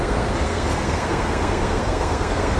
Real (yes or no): no